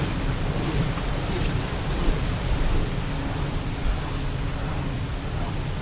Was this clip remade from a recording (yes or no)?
no